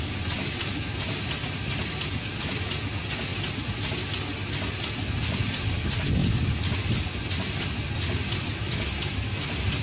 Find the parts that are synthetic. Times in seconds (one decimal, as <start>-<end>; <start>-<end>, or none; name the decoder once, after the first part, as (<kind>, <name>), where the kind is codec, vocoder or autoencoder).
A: none